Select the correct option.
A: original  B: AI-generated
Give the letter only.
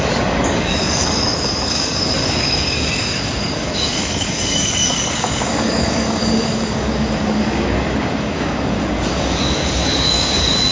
B